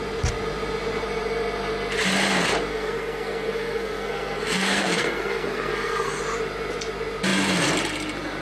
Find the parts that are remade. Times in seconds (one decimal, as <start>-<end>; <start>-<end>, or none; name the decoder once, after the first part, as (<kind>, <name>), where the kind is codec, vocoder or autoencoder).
2.7-6.2 (codec, SNAC)